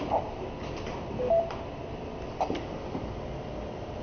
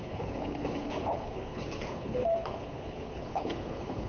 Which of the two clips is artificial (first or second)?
second